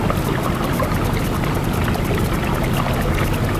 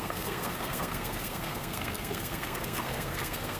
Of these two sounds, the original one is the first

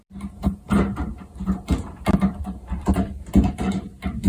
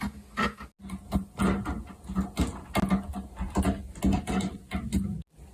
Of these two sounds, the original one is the second